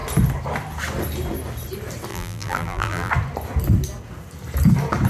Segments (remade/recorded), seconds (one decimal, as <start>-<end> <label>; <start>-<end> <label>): 0.0-2.1 recorded; 2.1-3.1 remade; 3.1-5.1 recorded